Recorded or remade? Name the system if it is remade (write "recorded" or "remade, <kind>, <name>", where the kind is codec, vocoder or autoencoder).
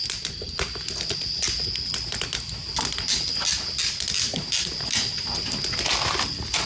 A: recorded